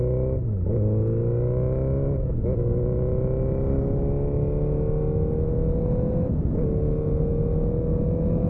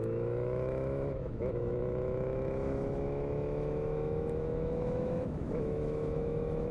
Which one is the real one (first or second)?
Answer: first